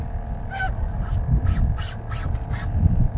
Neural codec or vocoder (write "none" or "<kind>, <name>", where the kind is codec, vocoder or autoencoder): none